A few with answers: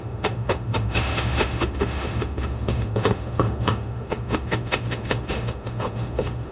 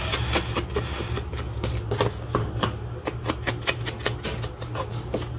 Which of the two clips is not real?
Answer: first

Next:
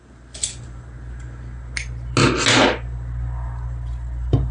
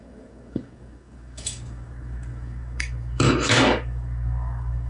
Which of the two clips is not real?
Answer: second